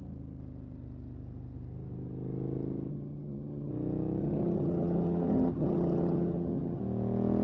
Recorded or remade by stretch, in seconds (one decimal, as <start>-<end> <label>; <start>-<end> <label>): 0.0-2.9 recorded; 2.9-3.7 remade; 3.7-4.2 recorded; 4.2-6.8 remade; 6.8-7.4 recorded

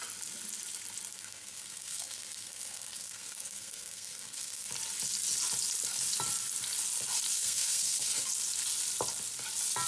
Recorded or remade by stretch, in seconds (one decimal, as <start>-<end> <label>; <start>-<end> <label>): 0.0-1.1 recorded; 1.1-4.7 remade; 4.7-7.3 recorded; 7.3-8.3 remade; 8.3-9.9 recorded

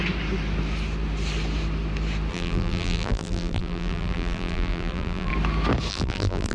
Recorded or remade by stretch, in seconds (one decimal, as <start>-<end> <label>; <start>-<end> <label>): 0.0-2.3 recorded; 2.3-5.3 remade; 5.3-5.9 recorded; 5.9-6.5 remade

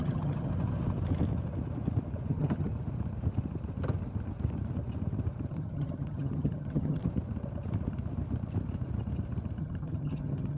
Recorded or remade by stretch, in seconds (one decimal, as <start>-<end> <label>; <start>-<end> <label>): 0.0-0.5 remade; 0.5-2.3 recorded; 2.3-2.7 remade; 2.7-5.5 recorded; 5.5-7.0 remade; 7.0-9.6 recorded; 9.6-10.6 remade

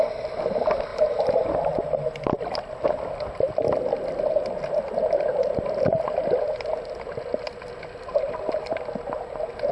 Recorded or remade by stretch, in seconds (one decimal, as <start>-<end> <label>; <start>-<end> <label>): 0.0-9.7 recorded

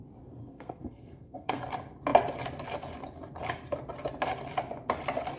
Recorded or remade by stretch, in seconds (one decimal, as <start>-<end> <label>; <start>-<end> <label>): 0.0-0.4 recorded; 0.4-1.6 remade; 1.6-5.4 recorded

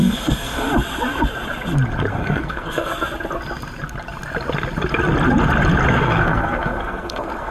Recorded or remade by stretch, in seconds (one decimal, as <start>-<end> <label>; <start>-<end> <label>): 0.0-0.7 remade; 0.7-2.1 recorded; 2.1-2.9 remade; 2.9-5.9 recorded; 5.9-7.5 remade